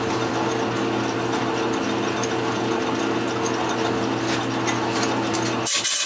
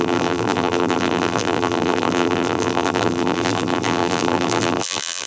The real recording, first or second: first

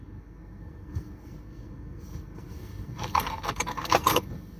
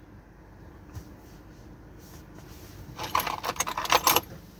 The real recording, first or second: second